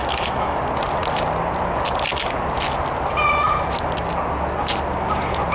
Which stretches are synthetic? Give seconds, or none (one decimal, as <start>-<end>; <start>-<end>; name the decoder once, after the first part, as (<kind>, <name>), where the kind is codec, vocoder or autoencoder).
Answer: 0.0-0.6 (autoencoder, DAC-VAE)